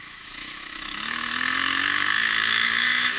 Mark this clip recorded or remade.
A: remade